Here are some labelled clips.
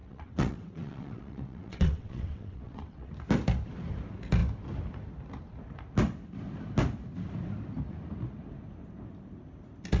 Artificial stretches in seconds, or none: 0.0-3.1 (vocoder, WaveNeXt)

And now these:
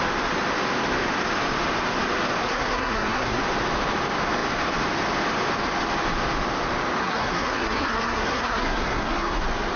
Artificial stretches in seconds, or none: 2.4-3.4 (codec, SNAC); 7.0-9.4

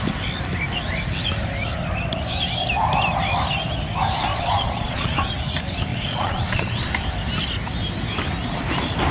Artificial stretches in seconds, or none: 4.3-5.3 (vocoder, Vocos); 5.9-6.9

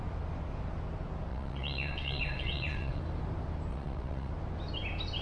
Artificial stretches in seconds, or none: 1.3-3.0 (vocoder, WaveNeXt); 3.7-4.3

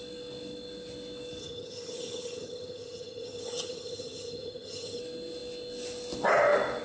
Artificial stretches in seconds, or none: 1.4-5.0 (vocoder, HiFi-GAN)

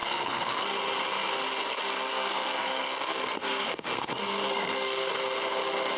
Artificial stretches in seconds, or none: 0.0-0.7 (codec, SNAC); 1.6-5.1

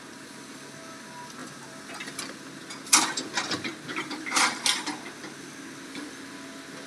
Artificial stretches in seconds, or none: 1.4-1.9 (vocoder, BigVGAN v2); 3.9-4.4